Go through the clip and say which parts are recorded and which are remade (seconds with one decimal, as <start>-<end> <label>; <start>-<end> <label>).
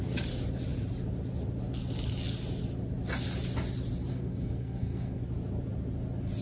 0.0-4.1 recorded; 4.1-5.2 remade; 5.2-6.4 recorded